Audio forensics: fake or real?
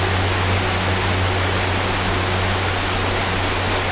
real